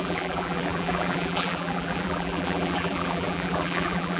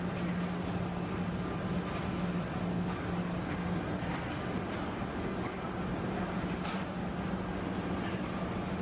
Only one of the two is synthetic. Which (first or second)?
first